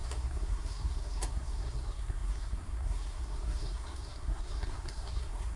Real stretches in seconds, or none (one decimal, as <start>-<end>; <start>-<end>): none